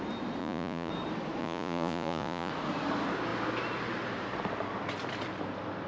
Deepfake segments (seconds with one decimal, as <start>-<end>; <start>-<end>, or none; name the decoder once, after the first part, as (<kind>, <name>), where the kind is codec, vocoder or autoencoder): 0.4-0.9 (vocoder, Vocos); 1.4-2.5